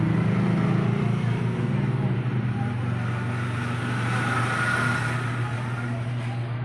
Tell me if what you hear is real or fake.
real